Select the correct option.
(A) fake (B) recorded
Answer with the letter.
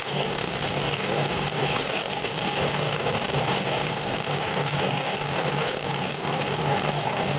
A